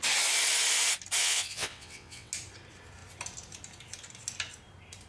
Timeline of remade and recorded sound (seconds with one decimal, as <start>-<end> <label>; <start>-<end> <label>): 0.0-1.2 recorded; 1.2-2.3 remade; 2.3-5.1 recorded